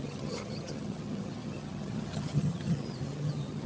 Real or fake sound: fake